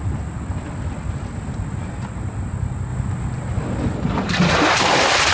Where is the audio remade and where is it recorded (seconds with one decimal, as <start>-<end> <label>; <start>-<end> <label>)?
0.0-5.3 recorded